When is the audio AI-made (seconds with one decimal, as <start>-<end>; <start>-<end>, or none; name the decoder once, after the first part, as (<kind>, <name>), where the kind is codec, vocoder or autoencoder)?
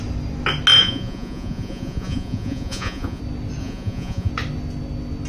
0.8-3.2 (vocoder, Vocos); 3.6-4.3